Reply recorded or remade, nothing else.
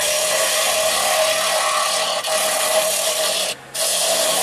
remade